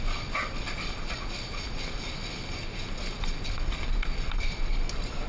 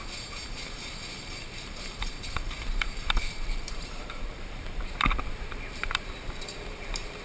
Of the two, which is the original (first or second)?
first